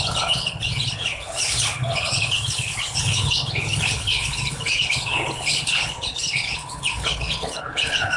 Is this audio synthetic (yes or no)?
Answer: yes